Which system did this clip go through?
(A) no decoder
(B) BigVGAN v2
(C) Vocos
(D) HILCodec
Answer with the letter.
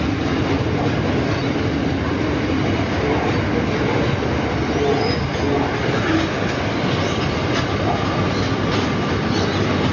A